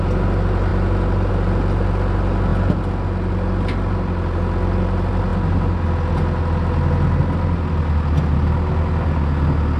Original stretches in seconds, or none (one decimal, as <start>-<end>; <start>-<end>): 0.0-9.8